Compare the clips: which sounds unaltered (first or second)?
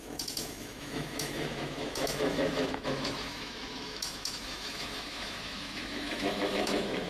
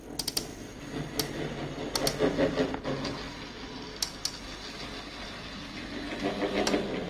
second